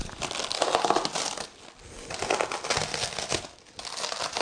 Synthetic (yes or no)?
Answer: no